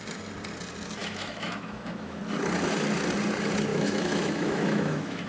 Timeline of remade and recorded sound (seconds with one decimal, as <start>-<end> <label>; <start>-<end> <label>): 0.0-1.0 recorded; 1.0-2.2 remade; 2.2-3.7 recorded; 3.7-5.3 remade